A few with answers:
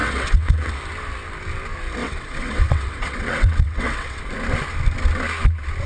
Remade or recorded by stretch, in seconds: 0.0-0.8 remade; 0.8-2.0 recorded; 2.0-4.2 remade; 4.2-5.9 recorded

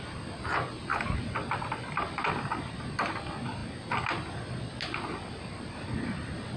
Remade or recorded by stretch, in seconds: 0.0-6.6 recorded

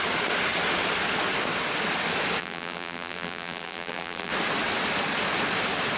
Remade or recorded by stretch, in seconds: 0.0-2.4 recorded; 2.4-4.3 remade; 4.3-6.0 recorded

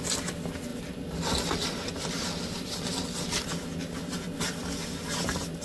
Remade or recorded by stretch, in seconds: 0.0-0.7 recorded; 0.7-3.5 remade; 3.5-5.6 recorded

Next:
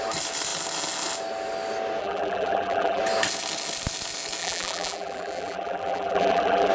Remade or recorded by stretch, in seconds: 0.0-2.0 recorded; 2.0-3.0 remade; 3.0-4.4 recorded; 4.4-6.7 remade